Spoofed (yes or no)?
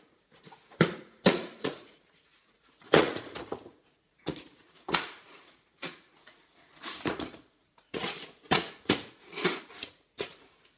yes